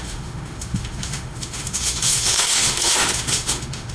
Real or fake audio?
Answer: fake